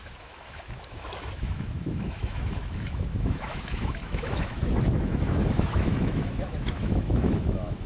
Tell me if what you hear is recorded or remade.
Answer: remade